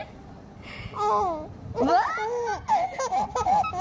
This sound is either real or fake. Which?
real